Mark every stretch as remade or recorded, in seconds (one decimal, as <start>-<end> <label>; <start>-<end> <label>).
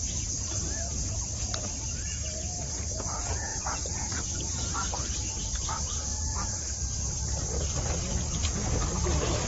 0.0-3.5 recorded; 3.5-4.7 remade; 4.7-9.5 recorded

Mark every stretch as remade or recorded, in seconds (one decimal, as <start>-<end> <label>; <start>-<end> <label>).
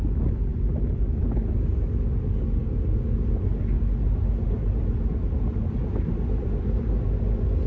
0.0-0.5 recorded; 0.5-1.5 remade; 1.5-7.7 recorded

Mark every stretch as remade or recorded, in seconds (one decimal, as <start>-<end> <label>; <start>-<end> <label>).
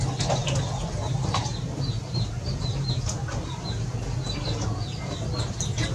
0.0-0.4 recorded; 0.4-3.9 remade; 3.9-5.9 recorded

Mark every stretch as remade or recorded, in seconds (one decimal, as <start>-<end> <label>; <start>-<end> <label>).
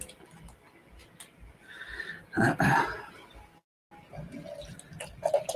0.0-5.6 recorded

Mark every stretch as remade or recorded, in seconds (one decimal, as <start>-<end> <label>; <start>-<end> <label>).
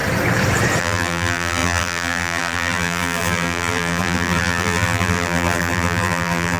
0.0-0.8 recorded; 0.8-6.6 remade